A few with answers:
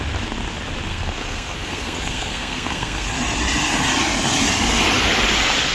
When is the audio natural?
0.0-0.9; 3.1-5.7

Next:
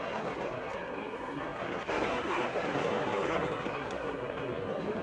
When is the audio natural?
none

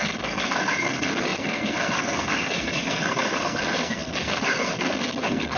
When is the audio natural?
none

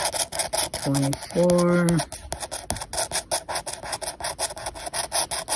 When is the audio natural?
0.0-5.6